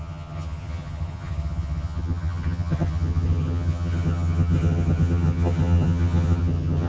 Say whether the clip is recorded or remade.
remade